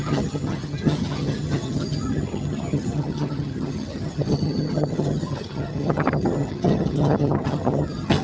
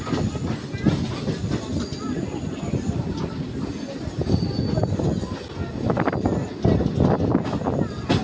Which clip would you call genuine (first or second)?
second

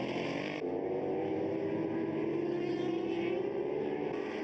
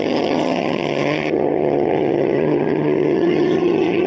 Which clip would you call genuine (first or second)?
first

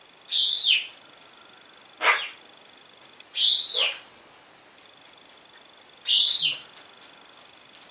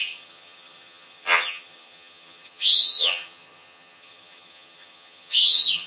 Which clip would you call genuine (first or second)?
first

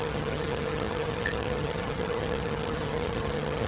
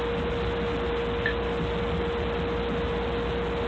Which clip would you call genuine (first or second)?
second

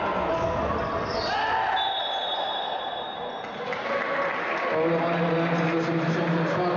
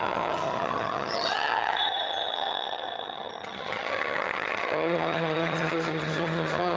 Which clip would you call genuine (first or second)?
first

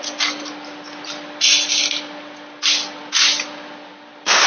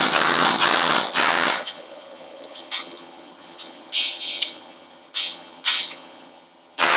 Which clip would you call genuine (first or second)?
first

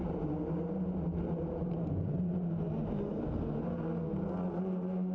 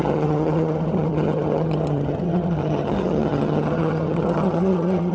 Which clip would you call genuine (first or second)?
first